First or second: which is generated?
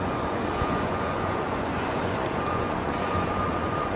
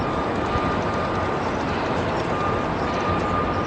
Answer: first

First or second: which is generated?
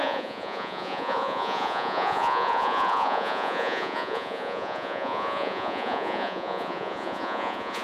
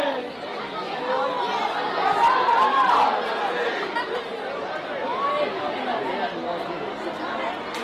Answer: first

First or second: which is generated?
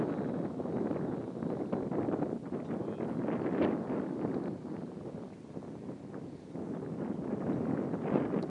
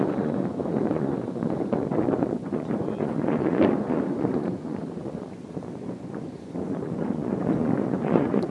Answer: second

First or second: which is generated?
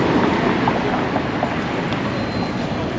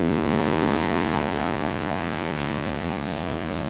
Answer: second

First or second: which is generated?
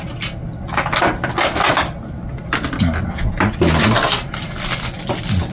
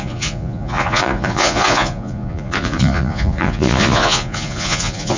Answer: second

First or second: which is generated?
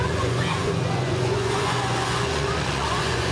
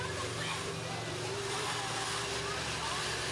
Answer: first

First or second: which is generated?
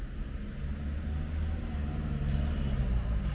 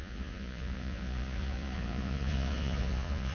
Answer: second